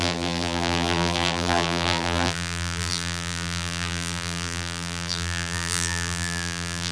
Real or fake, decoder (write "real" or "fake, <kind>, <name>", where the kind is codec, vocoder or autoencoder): fake, vocoder, BigVGAN v2